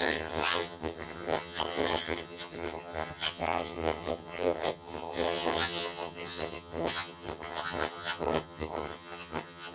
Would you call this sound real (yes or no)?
no